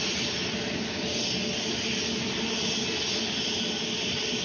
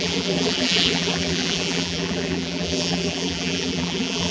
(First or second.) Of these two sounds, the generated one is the second